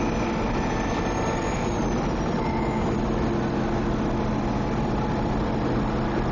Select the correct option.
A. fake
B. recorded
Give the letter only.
B